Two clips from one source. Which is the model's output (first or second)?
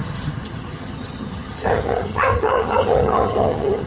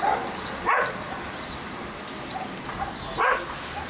first